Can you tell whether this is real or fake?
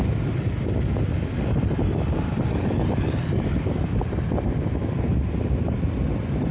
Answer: real